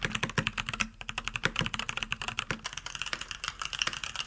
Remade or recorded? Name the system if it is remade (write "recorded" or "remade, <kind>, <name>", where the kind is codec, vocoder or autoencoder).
recorded